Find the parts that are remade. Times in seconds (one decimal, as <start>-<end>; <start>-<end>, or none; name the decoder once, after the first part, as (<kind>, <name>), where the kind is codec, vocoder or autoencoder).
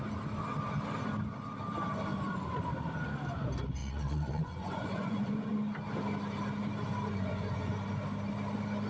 3.8-5.5 (vocoder, Vocos); 7.1-7.7